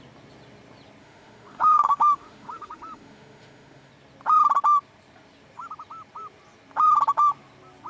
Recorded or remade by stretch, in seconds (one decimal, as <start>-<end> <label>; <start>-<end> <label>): 0.0-1.0 recorded; 1.0-3.9 remade; 3.9-7.9 recorded